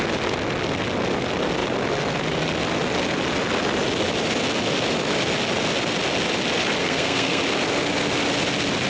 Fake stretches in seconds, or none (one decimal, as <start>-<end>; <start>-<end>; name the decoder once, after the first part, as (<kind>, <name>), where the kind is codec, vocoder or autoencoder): 6.8-7.4 (codec, SNAC)